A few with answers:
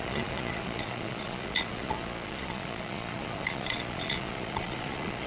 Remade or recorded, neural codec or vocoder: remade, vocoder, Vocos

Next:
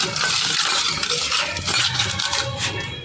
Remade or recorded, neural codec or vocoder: recorded